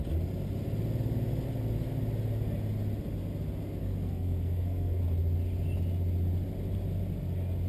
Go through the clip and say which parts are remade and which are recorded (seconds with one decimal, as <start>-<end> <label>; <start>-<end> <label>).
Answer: 0.0-3.8 recorded; 3.8-5.0 remade; 5.0-7.7 recorded